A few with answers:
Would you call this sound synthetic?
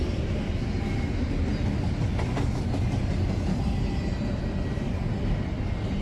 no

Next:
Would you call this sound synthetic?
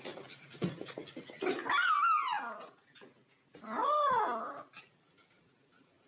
no